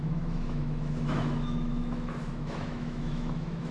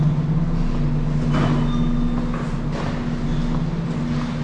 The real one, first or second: second